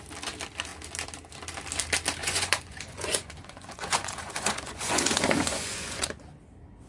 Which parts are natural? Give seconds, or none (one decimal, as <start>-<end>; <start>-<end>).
0.0-2.2; 6.2-6.9